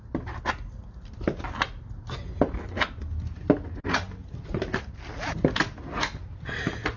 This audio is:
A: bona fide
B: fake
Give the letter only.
A